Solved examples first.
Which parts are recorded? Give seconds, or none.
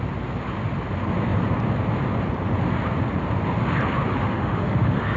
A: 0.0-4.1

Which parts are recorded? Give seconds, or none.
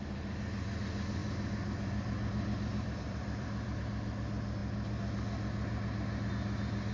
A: 0.0-1.2; 3.8-6.9